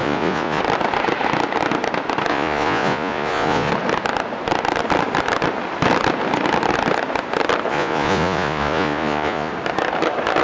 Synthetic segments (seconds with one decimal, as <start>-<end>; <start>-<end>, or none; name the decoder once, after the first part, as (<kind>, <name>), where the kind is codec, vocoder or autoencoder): 0.0-0.6 (vocoder, Vocos); 2.3-3.7; 7.7-9.5